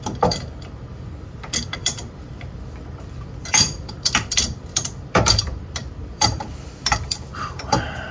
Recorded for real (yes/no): no